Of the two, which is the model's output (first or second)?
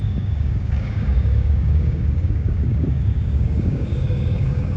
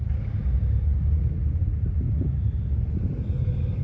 first